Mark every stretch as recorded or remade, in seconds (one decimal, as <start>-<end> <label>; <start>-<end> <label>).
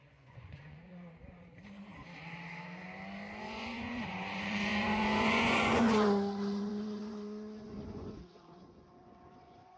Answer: 0.0-0.9 remade; 0.9-3.4 recorded; 3.4-9.8 remade